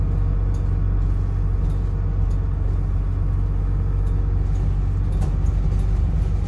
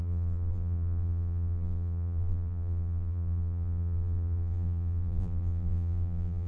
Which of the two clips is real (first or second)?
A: first